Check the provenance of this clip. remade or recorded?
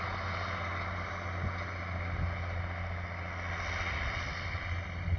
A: recorded